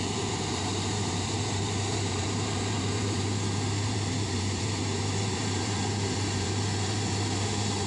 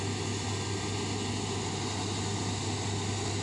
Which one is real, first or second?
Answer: second